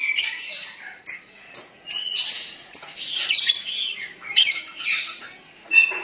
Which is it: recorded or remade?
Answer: remade